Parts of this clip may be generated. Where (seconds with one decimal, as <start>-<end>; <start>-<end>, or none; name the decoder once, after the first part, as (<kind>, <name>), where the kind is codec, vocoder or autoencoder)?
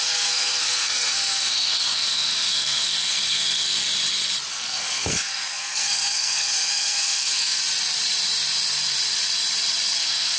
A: 0.0-3.8 (codec, SNAC); 4.5-7.6; 10.0-10.4